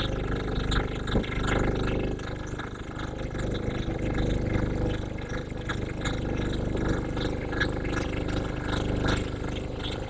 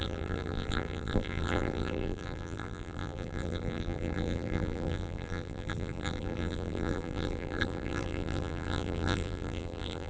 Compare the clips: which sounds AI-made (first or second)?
second